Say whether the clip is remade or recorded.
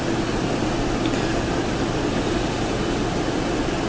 recorded